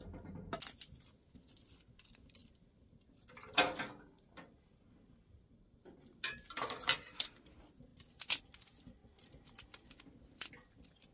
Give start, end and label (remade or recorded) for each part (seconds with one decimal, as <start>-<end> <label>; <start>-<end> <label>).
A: 0.0-7.9 recorded; 7.9-8.4 remade; 8.4-11.1 recorded